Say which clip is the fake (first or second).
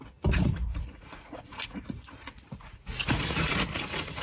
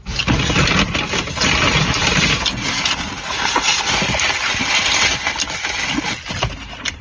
first